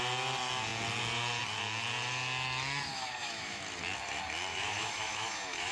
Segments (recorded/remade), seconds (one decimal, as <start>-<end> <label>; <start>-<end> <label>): 0.0-2.9 recorded; 2.9-3.6 remade; 3.6-4.5 recorded; 4.5-5.7 remade

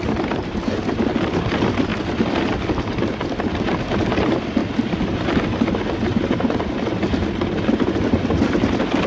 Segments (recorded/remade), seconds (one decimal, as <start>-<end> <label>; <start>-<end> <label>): 0.0-9.1 recorded

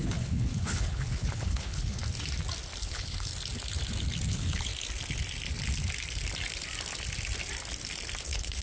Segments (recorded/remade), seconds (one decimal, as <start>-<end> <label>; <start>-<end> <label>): 0.0-2.0 remade; 2.0-2.8 recorded; 2.8-3.3 remade; 3.3-4.3 recorded; 4.3-4.7 remade; 4.7-8.2 recorded; 8.2-8.6 remade

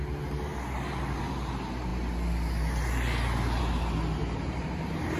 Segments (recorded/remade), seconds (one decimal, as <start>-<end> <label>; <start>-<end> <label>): 0.0-4.2 recorded; 4.2-5.2 remade

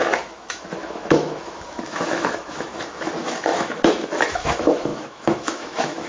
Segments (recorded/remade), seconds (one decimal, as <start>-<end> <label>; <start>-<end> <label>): 0.0-6.1 remade

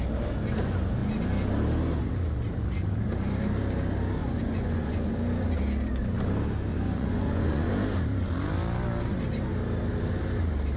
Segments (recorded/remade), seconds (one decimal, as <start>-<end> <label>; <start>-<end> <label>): 0.0-4.2 recorded; 4.2-5.1 remade; 5.1-6.7 recorded; 6.7-7.7 remade; 7.7-10.8 recorded

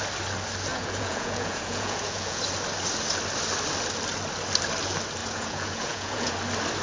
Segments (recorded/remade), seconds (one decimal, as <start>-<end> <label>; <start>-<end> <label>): 0.0-0.7 recorded; 0.7-2.4 remade; 2.4-5.2 recorded; 5.2-6.3 remade; 6.3-6.8 recorded